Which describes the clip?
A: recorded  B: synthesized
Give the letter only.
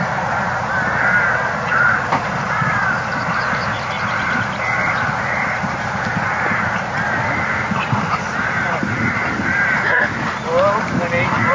B